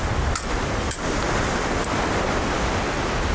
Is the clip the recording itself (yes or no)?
yes